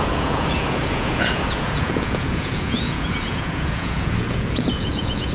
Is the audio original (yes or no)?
no